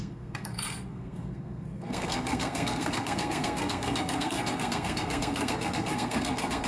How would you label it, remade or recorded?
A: remade